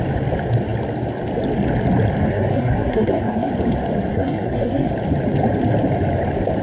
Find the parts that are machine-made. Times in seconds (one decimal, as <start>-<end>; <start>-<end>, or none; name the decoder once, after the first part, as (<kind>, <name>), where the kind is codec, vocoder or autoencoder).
2.3-3.5 (codec, SNAC); 4.1-4.9